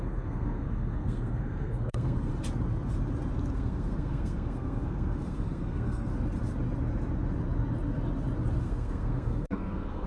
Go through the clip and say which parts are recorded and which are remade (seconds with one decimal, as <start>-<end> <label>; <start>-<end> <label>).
0.0-2.3 remade; 2.3-3.5 recorded; 3.5-6.1 remade; 6.1-8.6 recorded; 8.6-10.1 remade